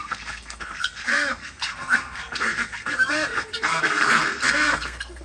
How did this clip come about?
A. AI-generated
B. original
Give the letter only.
A